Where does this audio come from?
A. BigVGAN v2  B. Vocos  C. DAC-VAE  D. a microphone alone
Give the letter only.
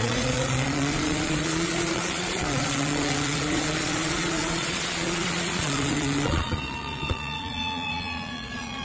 B